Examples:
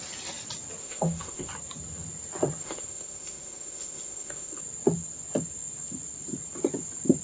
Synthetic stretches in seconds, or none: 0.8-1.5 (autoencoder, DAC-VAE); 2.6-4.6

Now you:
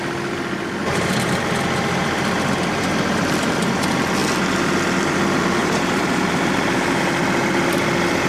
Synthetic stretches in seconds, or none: 0.8-1.5 (vocoder, BigVGAN v2); 5.6-7.0

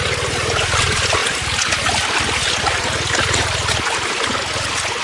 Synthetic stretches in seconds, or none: none

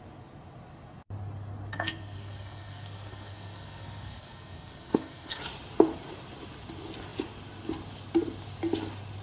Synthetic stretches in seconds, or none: 1.7-5.4 (codec, SNAC)